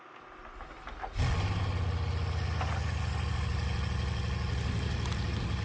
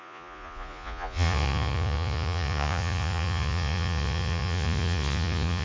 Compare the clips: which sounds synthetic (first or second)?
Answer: second